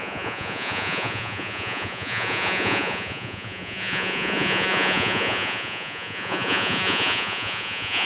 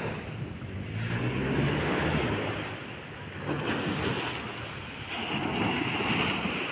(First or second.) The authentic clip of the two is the second